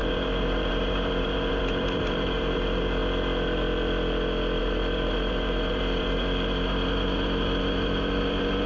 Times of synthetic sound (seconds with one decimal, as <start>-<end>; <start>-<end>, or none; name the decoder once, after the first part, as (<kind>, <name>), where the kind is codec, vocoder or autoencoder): 0.0-3.0 (vocoder, BigVGAN v2); 4.6-8.7